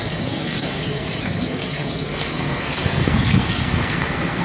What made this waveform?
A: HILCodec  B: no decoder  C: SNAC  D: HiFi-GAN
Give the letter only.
C